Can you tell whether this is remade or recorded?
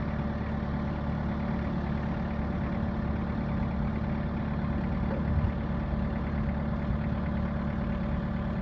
recorded